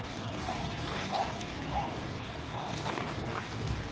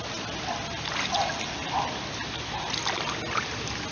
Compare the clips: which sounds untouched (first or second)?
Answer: second